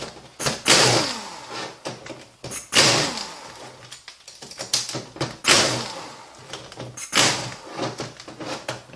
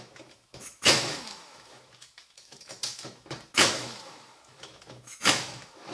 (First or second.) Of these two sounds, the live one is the first